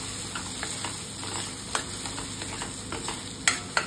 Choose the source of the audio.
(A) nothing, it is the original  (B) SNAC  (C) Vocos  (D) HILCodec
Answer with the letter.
A